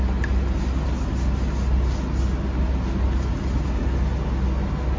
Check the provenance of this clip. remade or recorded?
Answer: recorded